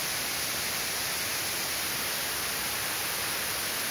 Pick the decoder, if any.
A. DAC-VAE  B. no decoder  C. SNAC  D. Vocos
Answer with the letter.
B